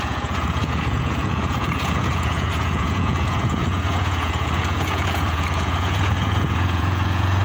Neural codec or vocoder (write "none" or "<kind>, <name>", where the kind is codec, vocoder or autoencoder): vocoder, Vocos